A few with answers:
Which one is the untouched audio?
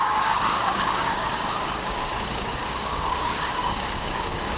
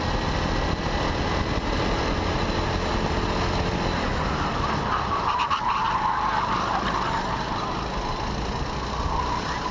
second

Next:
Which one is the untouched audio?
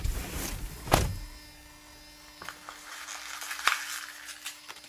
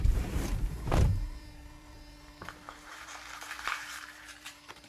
first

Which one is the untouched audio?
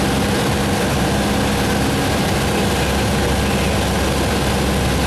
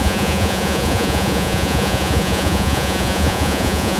first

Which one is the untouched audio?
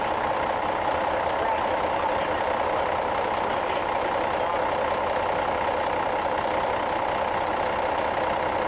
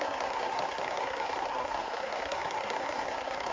first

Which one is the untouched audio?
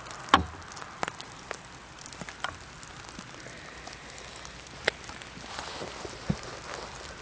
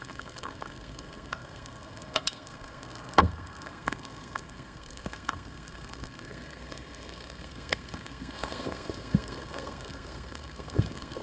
first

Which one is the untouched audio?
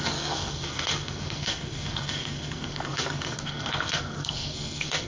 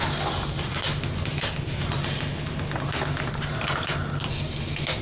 second